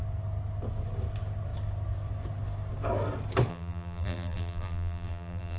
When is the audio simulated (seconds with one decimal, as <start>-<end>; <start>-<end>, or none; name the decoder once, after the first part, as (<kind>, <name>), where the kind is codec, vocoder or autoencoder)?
3.5-5.6 (vocoder, BigVGAN v2)